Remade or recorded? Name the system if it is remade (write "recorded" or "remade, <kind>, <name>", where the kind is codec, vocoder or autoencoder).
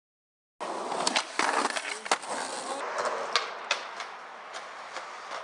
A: recorded